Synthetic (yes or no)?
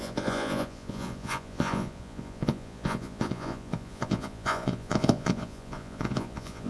yes